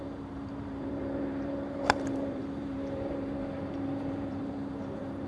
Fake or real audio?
fake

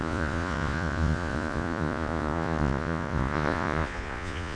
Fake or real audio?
fake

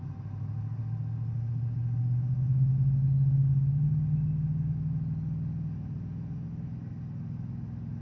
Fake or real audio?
real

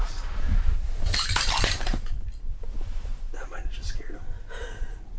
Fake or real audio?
fake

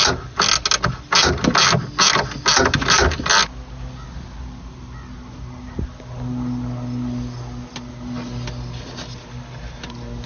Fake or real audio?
real